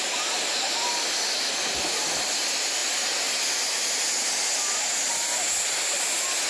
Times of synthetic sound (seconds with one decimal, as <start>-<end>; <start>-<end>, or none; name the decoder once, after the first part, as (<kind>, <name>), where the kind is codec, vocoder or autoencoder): none